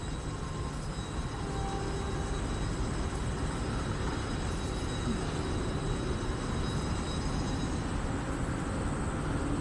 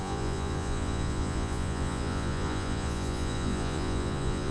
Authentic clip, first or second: first